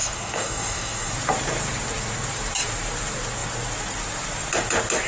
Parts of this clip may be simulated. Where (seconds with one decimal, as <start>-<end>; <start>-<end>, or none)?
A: 0.0-1.1